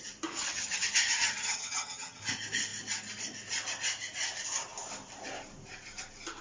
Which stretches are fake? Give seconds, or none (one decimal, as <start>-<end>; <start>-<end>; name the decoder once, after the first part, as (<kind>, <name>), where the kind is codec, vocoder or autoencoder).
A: 0.4-2.2 (vocoder, HiFi-GAN)